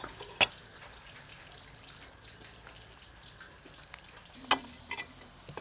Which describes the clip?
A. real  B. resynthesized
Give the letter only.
A